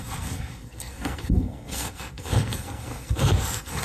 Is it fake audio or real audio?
fake